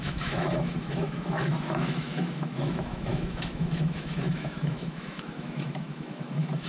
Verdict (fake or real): fake